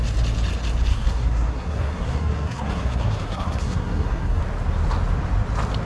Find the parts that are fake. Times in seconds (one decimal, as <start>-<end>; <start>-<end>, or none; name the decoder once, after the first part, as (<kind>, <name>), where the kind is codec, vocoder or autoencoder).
0.9-4.4 (codec, SNAC)